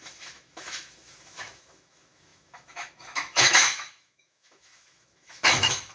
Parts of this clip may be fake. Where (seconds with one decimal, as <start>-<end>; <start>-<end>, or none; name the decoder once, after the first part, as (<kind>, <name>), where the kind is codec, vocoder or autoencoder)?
0.0-5.9 (autoencoder, DAC-VAE)